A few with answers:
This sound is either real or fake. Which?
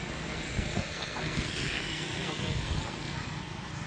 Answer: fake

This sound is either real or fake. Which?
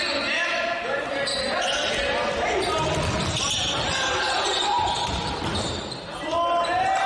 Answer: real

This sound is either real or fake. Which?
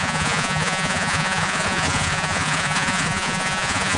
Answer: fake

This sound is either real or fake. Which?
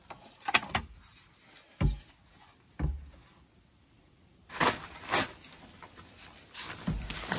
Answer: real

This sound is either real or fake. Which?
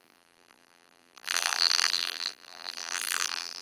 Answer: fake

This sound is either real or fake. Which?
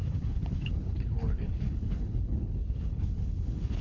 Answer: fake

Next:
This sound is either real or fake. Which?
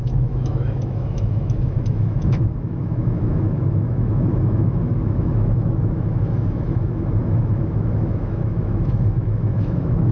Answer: fake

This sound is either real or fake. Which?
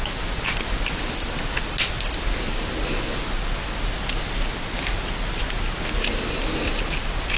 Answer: real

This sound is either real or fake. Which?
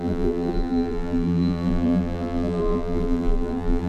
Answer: fake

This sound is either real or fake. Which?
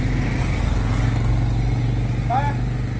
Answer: real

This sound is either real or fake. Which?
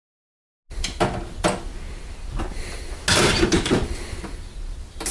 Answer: real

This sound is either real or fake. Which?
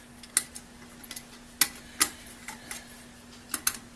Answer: real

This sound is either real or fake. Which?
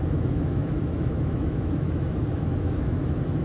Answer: fake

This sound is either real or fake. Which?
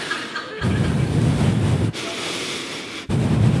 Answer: real